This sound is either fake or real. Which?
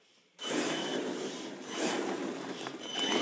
fake